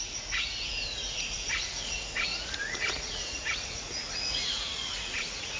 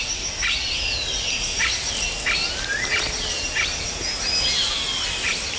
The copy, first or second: first